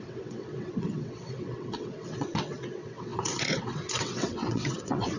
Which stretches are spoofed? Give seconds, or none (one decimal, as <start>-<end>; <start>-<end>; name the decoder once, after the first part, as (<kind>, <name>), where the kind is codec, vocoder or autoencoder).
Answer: 0.0-5.2 (vocoder, WaveNeXt)